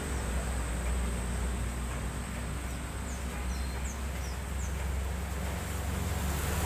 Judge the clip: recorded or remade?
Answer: recorded